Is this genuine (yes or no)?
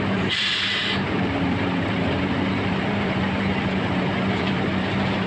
no